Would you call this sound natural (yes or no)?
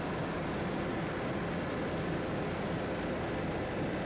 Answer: yes